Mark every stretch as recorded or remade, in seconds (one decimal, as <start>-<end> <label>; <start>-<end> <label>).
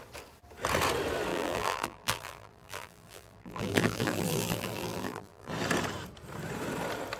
0.0-1.3 recorded; 1.3-5.5 remade; 5.5-7.2 recorded